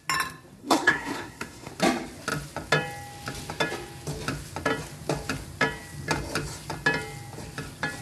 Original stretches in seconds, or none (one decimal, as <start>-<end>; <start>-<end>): 0.0-0.6; 1.7-8.0